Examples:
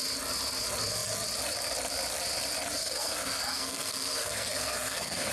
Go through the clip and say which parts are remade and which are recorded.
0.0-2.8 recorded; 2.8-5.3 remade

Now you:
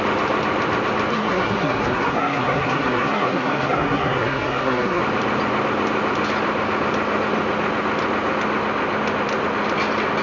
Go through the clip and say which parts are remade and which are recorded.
0.0-1.1 recorded; 1.1-5.0 remade; 5.0-10.2 recorded

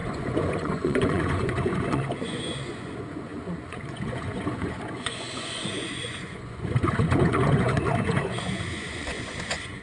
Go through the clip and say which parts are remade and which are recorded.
0.0-9.8 remade